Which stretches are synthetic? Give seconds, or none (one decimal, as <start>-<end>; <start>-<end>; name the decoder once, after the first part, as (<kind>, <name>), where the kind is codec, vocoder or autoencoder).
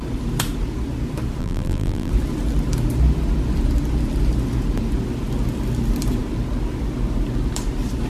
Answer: 1.4-2.1 (vocoder, BigVGAN v2)